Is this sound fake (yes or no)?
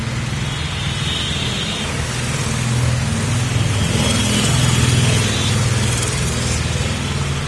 no